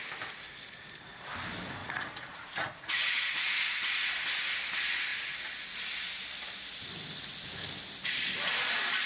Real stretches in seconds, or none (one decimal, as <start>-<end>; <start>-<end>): 0.0-1.8; 4.1-9.1